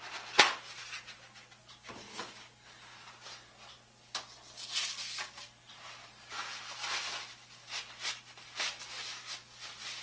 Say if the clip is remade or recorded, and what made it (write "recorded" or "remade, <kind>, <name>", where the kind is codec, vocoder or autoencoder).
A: recorded